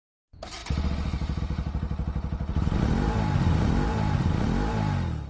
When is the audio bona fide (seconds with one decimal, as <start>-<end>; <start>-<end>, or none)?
0.0-5.3